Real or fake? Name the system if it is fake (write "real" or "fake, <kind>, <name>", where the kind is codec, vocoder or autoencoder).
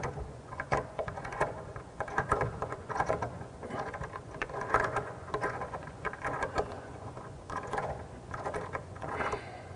fake, vocoder, Vocos